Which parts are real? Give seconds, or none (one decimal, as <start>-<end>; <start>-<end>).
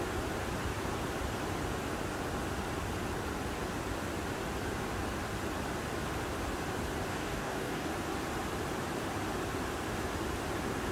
0.0-7.1; 7.9-10.9